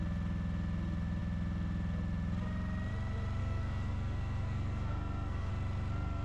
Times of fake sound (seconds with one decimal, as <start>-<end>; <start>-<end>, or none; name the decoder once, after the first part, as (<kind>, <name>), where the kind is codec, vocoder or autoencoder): 3.4-5.5 (codec, SNAC)